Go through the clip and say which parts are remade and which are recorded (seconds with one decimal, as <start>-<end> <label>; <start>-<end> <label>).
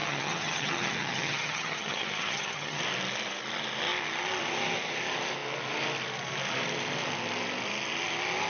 0.0-2.8 remade; 2.8-8.5 recorded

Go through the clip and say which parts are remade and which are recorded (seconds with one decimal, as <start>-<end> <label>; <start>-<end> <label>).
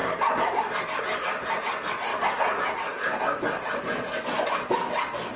0.0-5.4 recorded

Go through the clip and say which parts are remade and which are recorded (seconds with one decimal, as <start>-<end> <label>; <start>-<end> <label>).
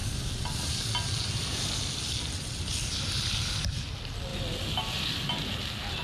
0.0-6.0 recorded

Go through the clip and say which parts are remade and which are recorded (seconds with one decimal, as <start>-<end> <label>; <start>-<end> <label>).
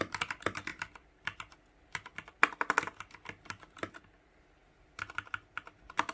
0.0-6.1 recorded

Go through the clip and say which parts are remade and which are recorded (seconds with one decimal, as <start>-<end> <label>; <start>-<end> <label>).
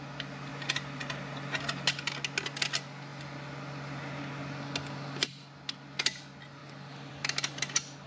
0.0-8.1 recorded